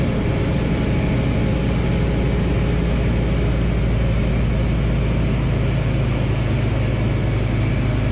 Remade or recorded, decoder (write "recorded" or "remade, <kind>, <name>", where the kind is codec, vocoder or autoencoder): recorded